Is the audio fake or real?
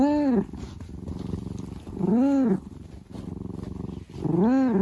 real